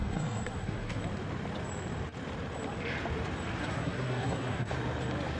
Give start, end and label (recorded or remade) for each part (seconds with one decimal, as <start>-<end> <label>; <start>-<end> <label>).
0.0-1.0 remade; 1.0-3.6 recorded; 3.6-4.7 remade; 4.7-5.4 recorded